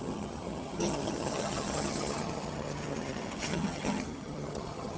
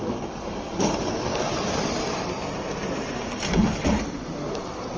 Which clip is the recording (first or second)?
second